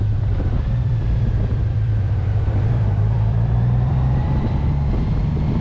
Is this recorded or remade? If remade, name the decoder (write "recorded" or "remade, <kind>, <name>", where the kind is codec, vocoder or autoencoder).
remade, vocoder, BigVGAN v2